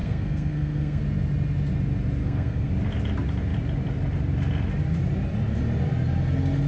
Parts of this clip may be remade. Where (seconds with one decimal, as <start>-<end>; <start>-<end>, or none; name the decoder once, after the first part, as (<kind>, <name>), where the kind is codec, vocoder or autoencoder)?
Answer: 0.0-1.0 (codec, SNAC); 2.2-2.7